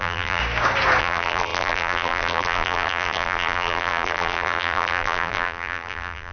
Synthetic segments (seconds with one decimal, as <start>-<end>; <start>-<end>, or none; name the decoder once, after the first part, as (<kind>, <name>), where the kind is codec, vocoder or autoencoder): 0.0-0.4 (vocoder, BigVGAN v2); 1.0-6.3